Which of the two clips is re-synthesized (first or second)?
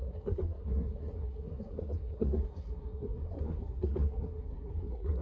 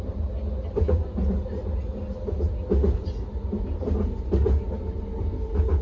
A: first